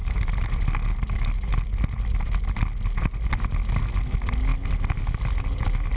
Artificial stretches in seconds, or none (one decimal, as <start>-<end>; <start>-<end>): none